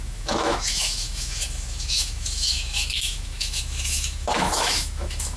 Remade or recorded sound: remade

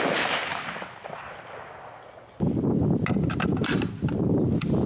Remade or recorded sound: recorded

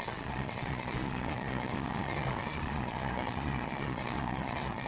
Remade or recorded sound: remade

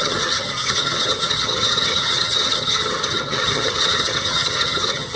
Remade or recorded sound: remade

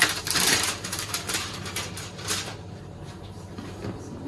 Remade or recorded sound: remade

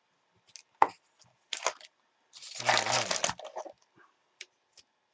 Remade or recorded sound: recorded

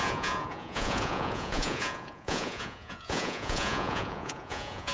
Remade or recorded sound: remade